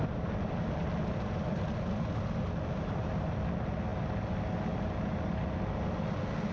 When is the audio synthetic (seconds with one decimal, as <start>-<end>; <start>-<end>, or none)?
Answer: none